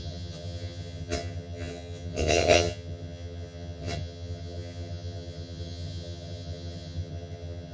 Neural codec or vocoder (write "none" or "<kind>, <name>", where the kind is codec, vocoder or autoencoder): vocoder, HiFi-GAN